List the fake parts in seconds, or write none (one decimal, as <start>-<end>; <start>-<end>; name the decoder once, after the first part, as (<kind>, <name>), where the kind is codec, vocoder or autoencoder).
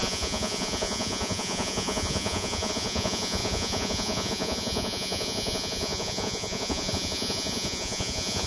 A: 0.0-8.5 (vocoder, Vocos)